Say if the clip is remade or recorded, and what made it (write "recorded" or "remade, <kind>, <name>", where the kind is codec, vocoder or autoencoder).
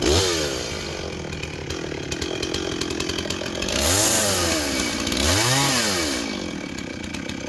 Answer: recorded